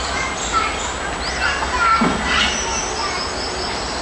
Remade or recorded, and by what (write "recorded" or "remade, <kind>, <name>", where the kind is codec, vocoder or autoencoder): recorded